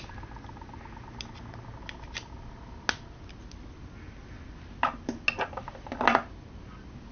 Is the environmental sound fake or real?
real